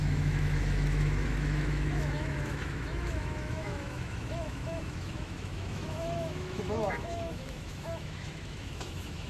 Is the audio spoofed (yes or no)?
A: yes